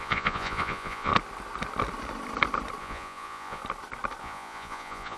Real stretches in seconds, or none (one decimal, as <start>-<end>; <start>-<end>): 1.1-2.8; 3.6-4.2